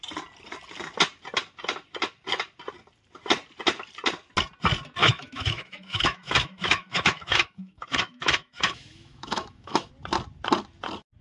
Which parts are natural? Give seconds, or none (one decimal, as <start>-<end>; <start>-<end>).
0.0-5.0; 9.9-11.2